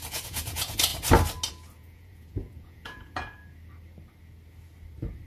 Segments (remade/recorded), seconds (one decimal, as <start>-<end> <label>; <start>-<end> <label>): 0.0-0.9 remade; 0.9-1.5 recorded; 1.5-3.4 remade; 3.4-5.3 recorded